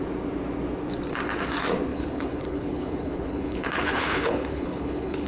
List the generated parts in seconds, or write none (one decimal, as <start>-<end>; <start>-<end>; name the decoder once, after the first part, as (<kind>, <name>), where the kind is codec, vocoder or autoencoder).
1.9-5.3 (codec, HILCodec)